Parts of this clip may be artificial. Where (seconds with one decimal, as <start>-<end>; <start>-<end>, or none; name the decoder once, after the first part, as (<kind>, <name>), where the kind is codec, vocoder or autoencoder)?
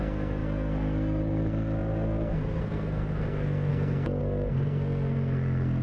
0.0-5.8 (codec, SNAC)